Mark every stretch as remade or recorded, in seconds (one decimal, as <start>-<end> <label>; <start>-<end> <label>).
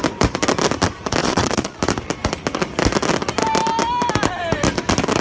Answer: 0.0-1.2 recorded; 1.2-1.8 remade; 1.8-5.2 recorded